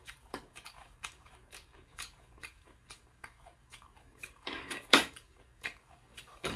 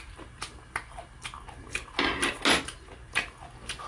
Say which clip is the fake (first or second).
first